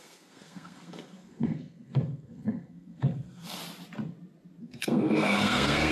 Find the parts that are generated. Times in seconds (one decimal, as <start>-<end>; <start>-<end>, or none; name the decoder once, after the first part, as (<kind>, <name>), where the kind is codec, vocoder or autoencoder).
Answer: 0.0-3.6 (codec, SNAC); 4.6-5.9